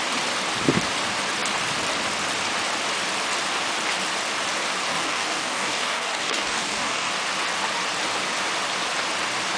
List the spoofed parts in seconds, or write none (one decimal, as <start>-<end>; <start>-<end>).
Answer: 4.9-7.1

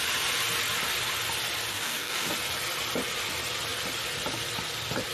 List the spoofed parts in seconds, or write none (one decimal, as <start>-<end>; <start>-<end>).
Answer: 1.7-2.3

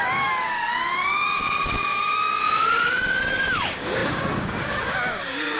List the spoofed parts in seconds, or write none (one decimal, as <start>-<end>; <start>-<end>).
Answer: 0.0-2.4; 2.9-5.6

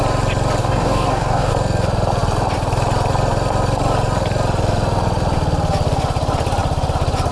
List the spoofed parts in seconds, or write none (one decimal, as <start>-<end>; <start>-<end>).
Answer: 0.6-1.5

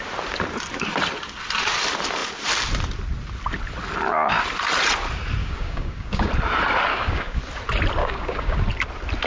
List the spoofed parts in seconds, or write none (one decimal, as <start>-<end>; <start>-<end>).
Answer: 5.4-6.3; 6.9-7.4; 8.0-8.6

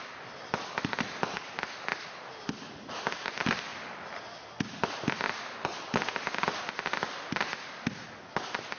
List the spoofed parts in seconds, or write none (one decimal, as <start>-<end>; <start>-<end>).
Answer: none

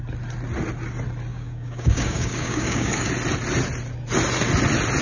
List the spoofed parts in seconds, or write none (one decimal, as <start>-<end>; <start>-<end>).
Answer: 1.3-3.1